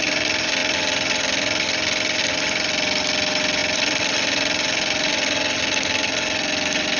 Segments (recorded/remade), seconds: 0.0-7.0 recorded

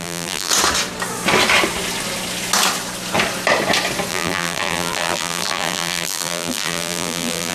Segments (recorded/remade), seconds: 0.0-0.5 remade; 0.5-4.1 recorded; 4.1-7.5 remade